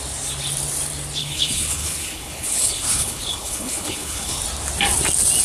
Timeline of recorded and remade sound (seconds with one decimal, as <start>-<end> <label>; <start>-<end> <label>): 0.0-1.2 recorded; 1.2-4.4 remade; 4.4-5.4 recorded